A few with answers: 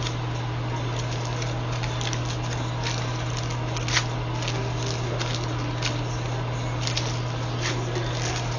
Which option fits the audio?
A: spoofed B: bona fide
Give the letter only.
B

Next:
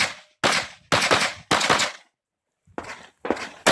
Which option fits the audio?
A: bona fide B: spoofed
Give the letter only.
A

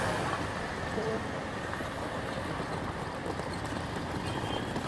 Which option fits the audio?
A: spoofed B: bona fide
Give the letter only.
B